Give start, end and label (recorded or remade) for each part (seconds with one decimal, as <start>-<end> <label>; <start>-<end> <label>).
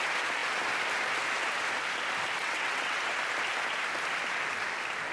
0.0-2.4 recorded; 2.4-3.0 remade; 3.0-5.1 recorded